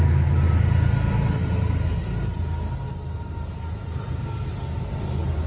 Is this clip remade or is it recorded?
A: recorded